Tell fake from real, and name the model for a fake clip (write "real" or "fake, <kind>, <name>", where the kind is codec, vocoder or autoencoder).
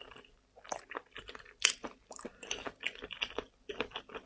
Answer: real